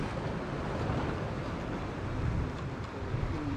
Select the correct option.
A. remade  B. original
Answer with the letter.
B